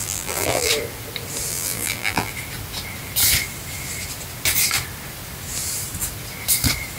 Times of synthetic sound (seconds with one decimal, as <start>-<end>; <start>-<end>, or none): 0.0-0.7; 1.5-2.3